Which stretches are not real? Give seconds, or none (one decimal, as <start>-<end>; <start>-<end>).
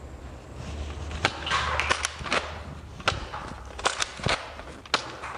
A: none